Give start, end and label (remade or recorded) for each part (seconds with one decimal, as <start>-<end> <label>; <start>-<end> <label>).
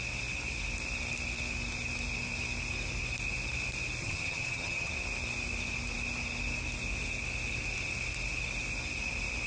0.0-4.0 recorded; 4.0-4.9 remade; 4.9-9.5 recorded